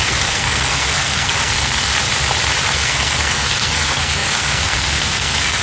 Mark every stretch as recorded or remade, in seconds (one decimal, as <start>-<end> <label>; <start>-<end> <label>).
0.0-1.9 remade; 1.9-2.7 recorded; 2.7-5.6 remade